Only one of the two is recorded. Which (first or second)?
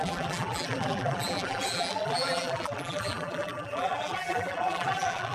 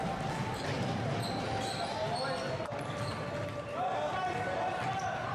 second